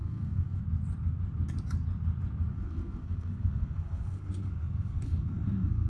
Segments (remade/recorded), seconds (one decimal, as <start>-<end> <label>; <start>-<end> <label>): 0.0-0.6 remade; 0.6-2.5 recorded; 2.5-5.9 remade